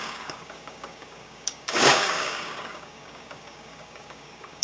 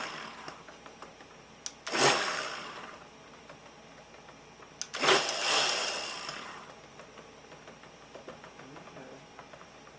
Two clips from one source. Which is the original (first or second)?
second